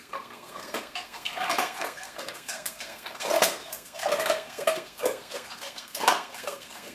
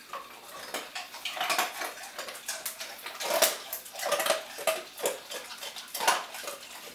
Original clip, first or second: second